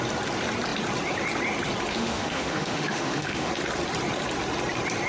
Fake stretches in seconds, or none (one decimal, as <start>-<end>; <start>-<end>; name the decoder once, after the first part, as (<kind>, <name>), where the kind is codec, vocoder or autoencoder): 1.9-3.5 (autoencoder, DAC-VAE)